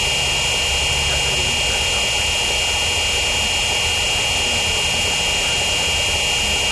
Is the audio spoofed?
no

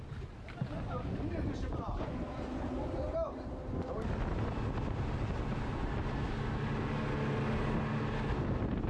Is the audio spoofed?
no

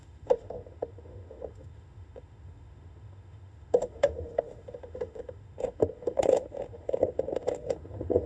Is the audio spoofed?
yes